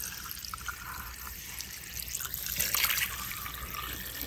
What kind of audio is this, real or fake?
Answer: real